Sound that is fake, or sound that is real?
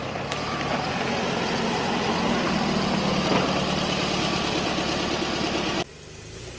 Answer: real